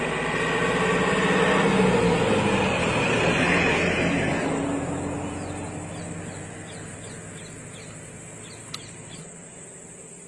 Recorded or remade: recorded